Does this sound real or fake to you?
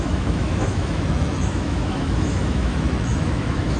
fake